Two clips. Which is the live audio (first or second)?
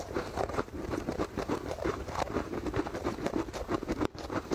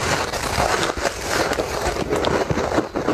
second